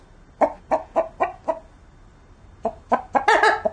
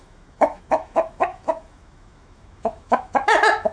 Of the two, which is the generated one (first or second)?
second